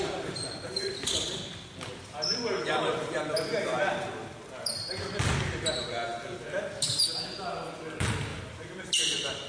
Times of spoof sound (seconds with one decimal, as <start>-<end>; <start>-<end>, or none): none